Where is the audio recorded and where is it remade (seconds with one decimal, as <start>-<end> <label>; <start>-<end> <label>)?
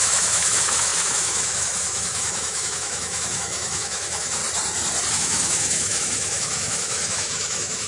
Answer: 0.0-4.4 remade; 4.4-5.1 recorded; 5.1-7.9 remade